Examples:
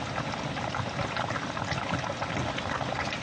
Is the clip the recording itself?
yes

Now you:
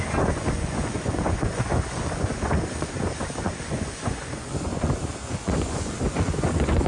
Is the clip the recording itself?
no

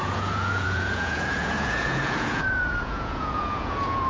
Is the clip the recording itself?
no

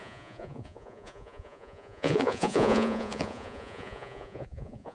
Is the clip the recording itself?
no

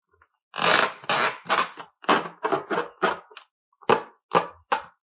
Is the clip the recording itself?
yes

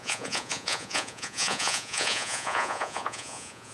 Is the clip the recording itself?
no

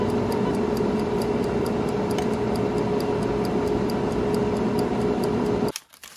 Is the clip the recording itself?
yes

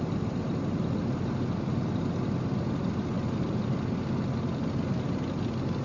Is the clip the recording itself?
yes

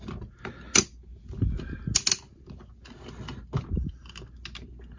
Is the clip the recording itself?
yes